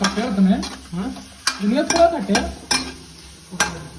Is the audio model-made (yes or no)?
no